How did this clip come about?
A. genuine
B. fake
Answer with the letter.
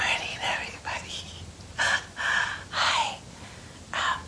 A